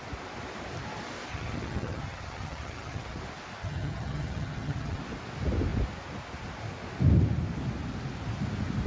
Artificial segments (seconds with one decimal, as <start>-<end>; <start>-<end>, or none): 1.3-3.2; 3.6-5.0